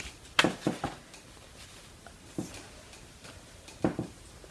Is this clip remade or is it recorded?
recorded